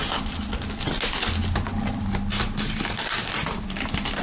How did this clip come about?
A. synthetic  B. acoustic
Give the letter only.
B